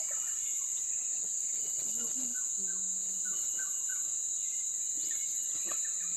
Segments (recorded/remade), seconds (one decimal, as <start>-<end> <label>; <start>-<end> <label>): 0.0-2.3 recorded; 2.3-3.8 remade; 3.8-6.2 recorded